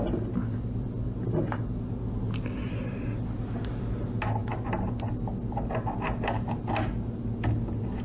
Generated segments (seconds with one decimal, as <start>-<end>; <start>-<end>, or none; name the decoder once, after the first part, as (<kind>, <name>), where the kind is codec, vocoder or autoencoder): none